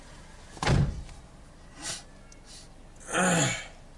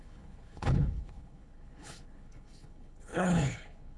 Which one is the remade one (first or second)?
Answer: second